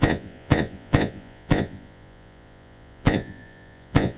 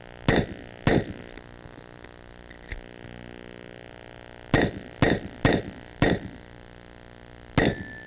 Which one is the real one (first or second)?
second